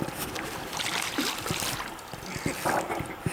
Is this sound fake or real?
real